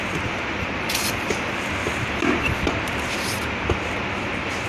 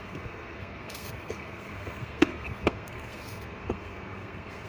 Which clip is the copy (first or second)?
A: second